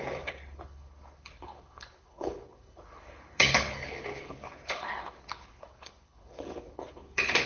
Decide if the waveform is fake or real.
fake